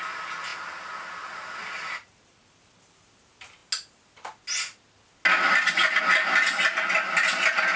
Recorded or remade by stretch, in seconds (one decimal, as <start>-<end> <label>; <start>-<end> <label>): 0.0-7.8 recorded